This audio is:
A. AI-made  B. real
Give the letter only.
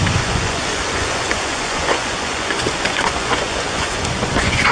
A